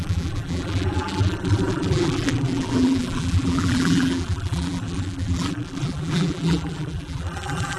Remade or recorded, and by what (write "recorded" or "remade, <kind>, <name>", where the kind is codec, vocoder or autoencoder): remade, vocoder, BigVGAN v2